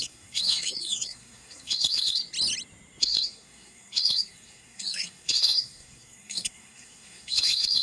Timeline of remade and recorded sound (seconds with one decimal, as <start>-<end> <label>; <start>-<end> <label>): 0.0-2.2 remade; 2.2-3.0 recorded; 3.0-7.8 remade